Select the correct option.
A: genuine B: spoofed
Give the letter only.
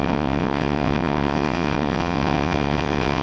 B